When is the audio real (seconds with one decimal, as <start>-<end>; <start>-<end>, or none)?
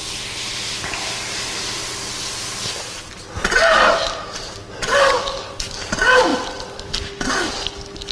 0.0-8.1